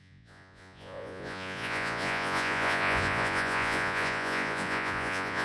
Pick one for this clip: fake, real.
fake